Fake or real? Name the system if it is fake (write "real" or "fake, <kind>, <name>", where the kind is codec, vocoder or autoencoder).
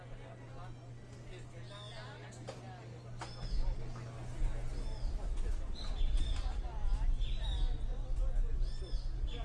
real